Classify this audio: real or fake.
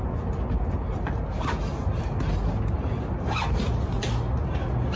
real